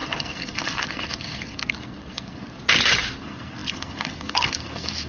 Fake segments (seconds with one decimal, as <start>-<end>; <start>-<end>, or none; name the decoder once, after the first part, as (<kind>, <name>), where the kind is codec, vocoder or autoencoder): 0.0-2.6 (codec, SNAC); 3.2-5.1